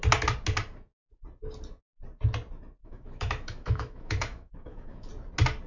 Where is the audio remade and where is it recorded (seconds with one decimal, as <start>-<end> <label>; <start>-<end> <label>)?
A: 0.0-2.8 recorded; 2.8-5.1 remade; 5.1-5.7 recorded